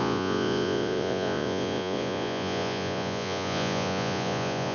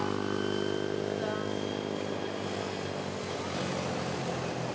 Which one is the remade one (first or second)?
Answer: first